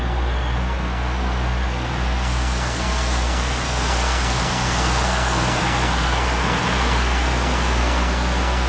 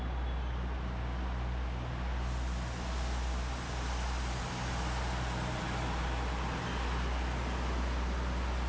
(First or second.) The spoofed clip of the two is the first